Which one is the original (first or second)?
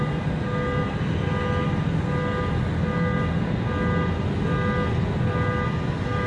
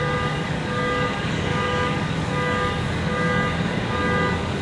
first